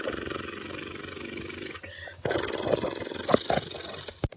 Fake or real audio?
real